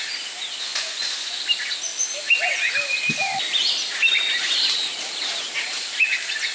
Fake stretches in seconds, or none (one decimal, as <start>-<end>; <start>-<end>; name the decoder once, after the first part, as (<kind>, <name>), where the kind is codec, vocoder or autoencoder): 0.7-1.4 (vocoder, Vocos)